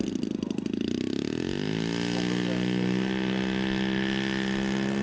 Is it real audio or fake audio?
real